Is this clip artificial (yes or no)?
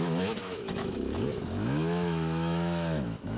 yes